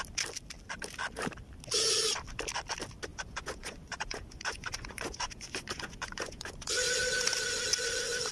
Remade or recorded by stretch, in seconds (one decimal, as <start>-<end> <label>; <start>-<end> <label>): 0.0-3.1 recorded; 3.1-6.7 remade; 6.7-8.3 recorded